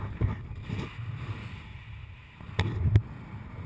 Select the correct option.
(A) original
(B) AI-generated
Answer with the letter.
A